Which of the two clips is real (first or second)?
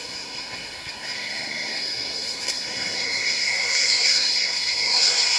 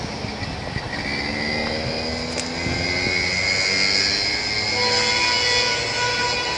second